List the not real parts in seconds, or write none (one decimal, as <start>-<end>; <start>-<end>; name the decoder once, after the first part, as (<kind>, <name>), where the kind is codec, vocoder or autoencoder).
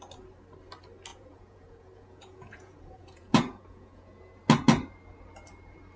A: 1.1-4.4 (vocoder, Vocos)